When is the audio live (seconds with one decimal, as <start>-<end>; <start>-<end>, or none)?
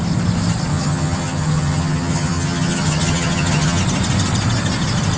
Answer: 0.0-0.7; 3.8-5.2